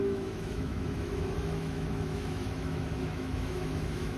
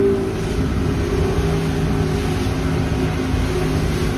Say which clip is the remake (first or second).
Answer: first